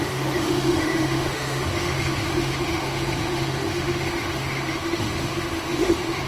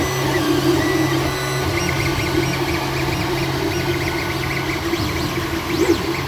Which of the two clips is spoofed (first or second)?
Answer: first